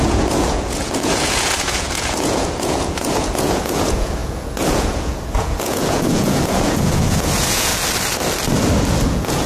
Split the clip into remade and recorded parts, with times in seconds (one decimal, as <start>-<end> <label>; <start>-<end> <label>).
0.0-7.7 remade; 7.7-9.0 recorded; 9.0-9.5 remade